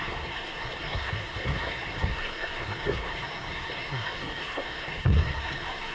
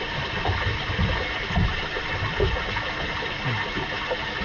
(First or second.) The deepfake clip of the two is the first